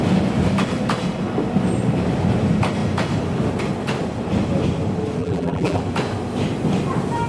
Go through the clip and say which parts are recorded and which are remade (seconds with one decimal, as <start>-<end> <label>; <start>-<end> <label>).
0.0-5.2 recorded; 5.2-5.8 remade; 5.8-7.3 recorded